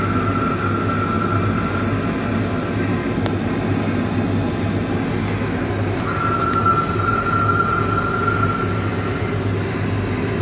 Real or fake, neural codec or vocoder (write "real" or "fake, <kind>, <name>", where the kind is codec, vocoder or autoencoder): real